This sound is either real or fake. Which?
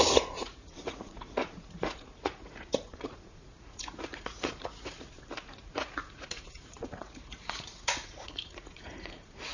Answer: fake